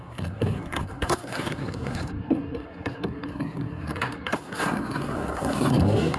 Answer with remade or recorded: remade